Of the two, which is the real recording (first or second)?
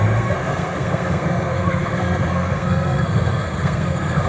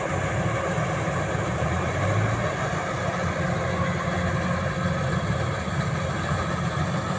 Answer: second